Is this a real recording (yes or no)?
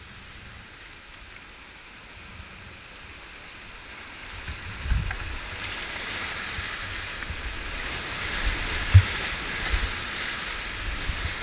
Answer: yes